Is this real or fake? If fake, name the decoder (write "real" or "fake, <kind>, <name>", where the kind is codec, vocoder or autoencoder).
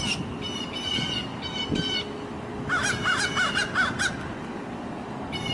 real